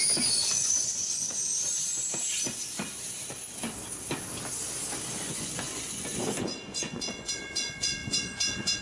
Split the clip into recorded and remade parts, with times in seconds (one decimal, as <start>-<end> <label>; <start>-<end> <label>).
0.0-0.5 recorded; 0.5-1.4 remade; 1.4-5.2 recorded; 5.2-8.8 remade